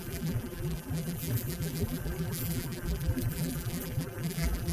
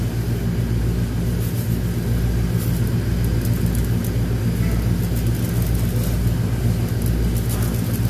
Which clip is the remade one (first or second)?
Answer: first